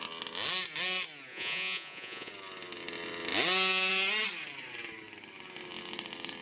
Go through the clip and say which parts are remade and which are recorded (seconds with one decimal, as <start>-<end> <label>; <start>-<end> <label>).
0.0-1.3 recorded; 1.3-2.3 remade; 2.3-6.4 recorded